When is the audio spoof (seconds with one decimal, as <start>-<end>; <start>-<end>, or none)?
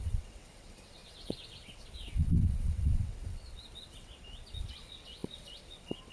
0.0-6.1